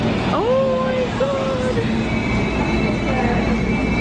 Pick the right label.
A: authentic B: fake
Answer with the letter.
A